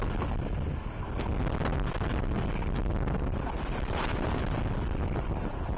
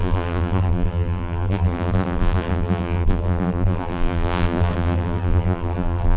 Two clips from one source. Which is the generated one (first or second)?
second